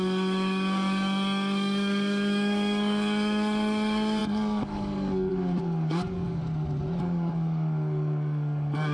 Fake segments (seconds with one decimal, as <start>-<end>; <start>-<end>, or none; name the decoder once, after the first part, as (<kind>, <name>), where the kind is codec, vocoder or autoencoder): 0.0-6.4 (codec, DAC); 7.0-8.9